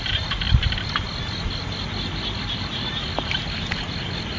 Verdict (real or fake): real